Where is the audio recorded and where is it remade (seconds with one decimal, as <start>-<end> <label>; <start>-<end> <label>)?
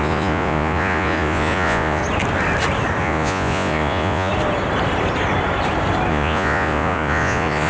0.0-2.0 remade; 2.0-3.0 recorded; 3.0-4.3 remade; 4.3-6.1 recorded; 6.1-7.7 remade